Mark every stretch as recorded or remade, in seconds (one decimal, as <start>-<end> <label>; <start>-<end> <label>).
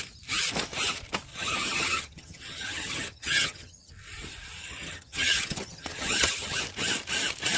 0.0-1.3 recorded; 1.3-3.9 remade; 3.9-4.6 recorded; 4.6-6.6 remade; 6.6-7.6 recorded